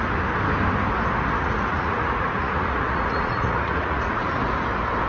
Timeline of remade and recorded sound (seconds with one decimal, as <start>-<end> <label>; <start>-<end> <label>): 0.0-1.3 recorded; 1.3-4.4 remade; 4.4-5.1 recorded